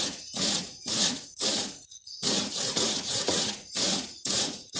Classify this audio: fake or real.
fake